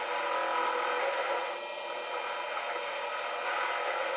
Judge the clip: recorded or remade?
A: recorded